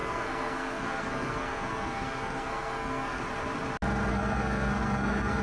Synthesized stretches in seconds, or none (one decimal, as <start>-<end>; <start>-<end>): 0.0-3.2; 4.1-5.4